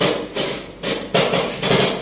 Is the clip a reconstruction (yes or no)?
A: no